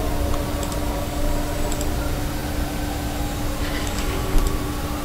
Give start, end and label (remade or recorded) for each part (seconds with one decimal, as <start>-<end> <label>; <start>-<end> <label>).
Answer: 0.0-0.8 recorded; 0.8-1.4 remade; 1.4-3.6 recorded; 3.6-4.4 remade; 4.4-5.0 recorded

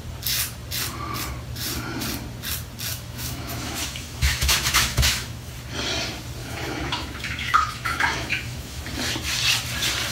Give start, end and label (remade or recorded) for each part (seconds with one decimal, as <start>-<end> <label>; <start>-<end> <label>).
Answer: 0.0-2.9 recorded; 2.9-5.5 remade; 5.5-6.4 recorded; 6.4-8.8 remade; 8.8-10.1 recorded

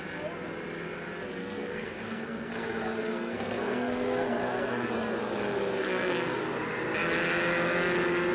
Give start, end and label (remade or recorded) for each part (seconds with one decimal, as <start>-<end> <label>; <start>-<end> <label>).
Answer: 0.0-1.4 recorded; 1.4-4.9 remade; 4.9-5.8 recorded; 5.8-6.4 remade; 6.4-8.3 recorded